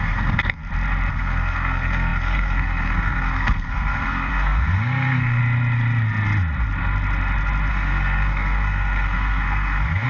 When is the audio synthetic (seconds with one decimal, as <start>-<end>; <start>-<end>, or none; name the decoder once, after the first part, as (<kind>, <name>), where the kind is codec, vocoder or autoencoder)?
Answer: 0.0-0.6 (codec, SNAC); 1.1-5.4; 7.7-10.1